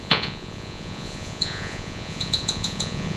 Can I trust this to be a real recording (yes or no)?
no